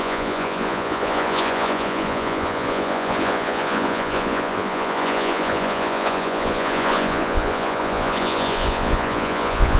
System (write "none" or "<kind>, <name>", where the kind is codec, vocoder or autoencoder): vocoder, Vocos